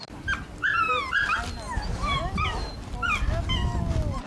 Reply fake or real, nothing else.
real